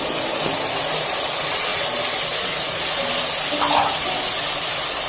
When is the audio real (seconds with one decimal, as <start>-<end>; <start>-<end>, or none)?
0.0-5.1